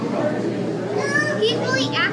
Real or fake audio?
real